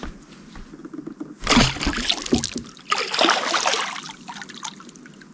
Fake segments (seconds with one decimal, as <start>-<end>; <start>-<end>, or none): none